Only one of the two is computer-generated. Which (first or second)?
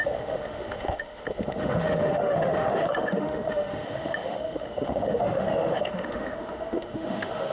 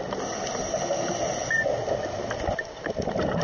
first